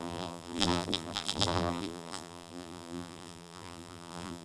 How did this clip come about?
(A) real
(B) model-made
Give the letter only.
B